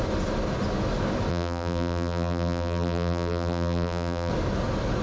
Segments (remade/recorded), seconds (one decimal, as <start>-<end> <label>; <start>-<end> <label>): 0.0-1.3 recorded; 1.3-4.3 remade; 4.3-5.0 recorded